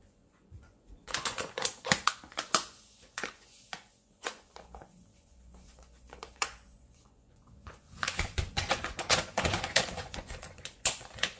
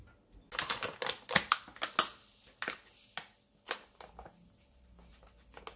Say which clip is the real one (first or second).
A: second